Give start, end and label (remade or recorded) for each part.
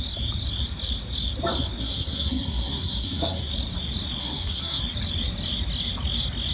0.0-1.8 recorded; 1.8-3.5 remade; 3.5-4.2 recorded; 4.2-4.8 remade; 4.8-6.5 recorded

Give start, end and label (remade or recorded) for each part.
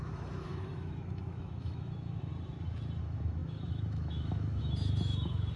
0.0-2.3 remade; 2.3-3.0 recorded; 3.0-5.6 remade